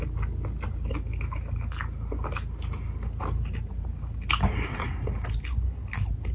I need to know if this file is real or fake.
real